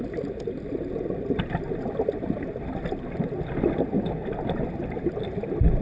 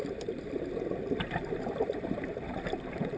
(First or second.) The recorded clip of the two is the first